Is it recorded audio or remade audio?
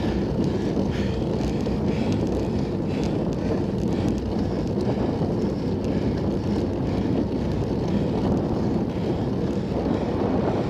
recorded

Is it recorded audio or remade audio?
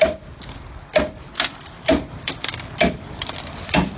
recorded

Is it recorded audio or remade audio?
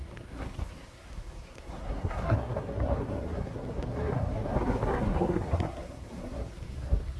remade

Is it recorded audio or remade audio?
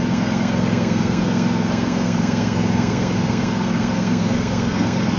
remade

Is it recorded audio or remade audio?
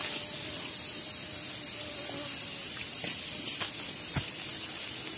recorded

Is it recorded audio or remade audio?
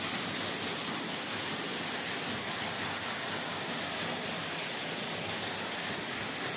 recorded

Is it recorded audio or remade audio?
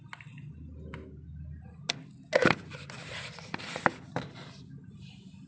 recorded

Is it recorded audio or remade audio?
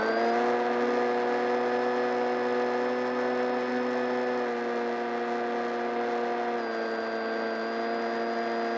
recorded